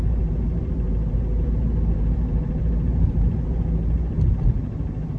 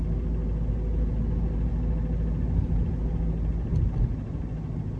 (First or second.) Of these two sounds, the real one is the second